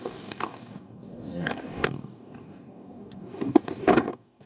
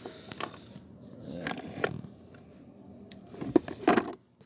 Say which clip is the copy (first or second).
first